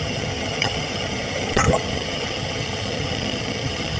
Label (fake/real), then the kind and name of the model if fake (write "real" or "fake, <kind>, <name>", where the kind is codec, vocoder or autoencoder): fake, vocoder, HiFi-GAN